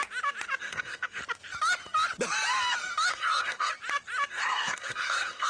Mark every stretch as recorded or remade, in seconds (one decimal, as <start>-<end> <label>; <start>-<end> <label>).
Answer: 0.0-0.6 recorded; 0.6-1.2 remade; 1.2-3.1 recorded; 3.1-3.7 remade; 3.7-4.3 recorded; 4.3-5.5 remade